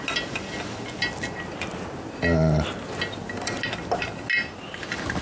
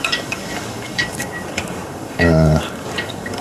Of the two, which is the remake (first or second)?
second